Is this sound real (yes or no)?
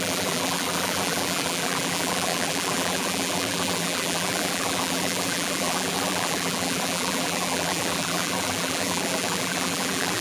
no